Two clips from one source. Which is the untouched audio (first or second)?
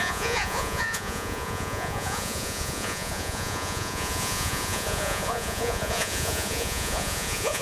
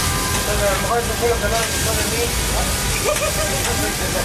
second